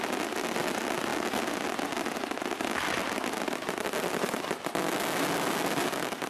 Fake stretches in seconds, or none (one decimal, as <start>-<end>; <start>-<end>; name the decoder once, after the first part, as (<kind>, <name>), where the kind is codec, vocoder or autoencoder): none